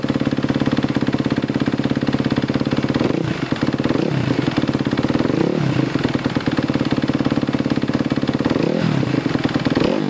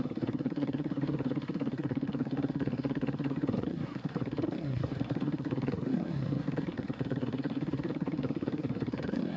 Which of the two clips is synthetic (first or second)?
second